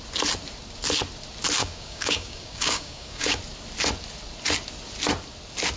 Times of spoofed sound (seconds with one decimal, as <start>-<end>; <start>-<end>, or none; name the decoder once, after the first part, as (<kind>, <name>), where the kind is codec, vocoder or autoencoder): 1.6-3.4 (codec, DAC)